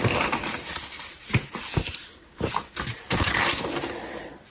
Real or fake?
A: real